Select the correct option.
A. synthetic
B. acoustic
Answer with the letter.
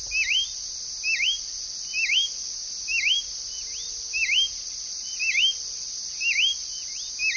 B